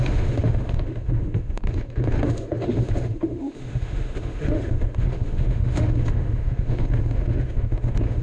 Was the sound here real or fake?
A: fake